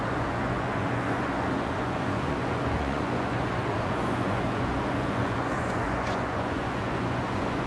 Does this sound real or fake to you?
fake